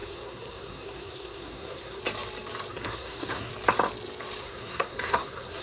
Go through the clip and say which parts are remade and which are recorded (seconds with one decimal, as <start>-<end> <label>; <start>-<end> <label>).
0.0-2.0 remade; 2.0-2.7 recorded; 2.7-3.5 remade; 3.5-4.4 recorded; 4.4-5.6 remade